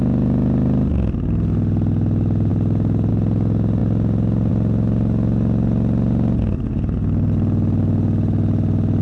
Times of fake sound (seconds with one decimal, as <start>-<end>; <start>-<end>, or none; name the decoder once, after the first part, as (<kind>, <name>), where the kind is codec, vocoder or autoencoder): none